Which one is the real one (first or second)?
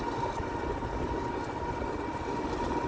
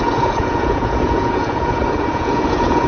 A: first